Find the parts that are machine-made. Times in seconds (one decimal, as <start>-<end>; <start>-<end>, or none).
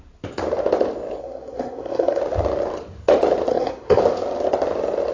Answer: 1.2-2.2; 3.5-4.0